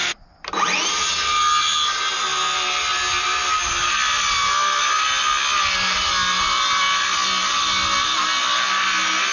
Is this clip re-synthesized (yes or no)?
no